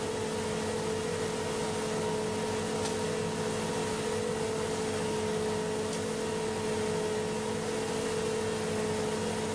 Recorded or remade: recorded